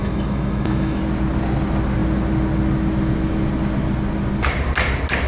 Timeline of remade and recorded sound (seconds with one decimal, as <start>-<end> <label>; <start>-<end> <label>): 0.0-1.0 remade; 1.0-5.3 recorded